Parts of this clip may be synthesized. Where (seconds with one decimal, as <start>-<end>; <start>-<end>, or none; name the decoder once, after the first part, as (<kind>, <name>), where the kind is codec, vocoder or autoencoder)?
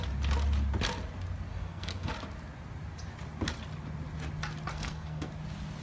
1.5-2.1 (codec, SNAC); 4.7-5.3